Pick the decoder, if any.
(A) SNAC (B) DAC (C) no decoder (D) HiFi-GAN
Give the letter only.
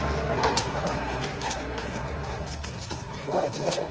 A